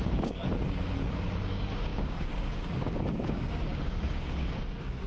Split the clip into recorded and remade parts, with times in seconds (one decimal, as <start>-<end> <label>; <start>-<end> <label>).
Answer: 0.0-0.4 remade; 0.4-1.4 recorded; 1.4-5.1 remade